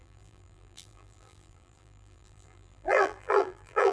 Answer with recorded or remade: remade